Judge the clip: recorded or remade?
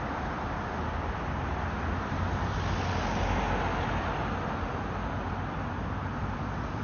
recorded